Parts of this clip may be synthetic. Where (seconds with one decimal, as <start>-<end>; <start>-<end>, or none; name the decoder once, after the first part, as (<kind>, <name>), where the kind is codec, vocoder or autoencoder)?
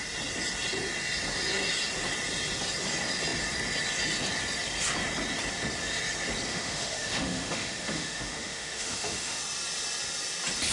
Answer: 6.5-9.4 (autoencoder, DAC-VAE)